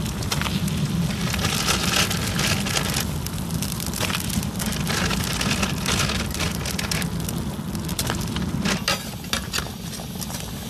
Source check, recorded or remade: recorded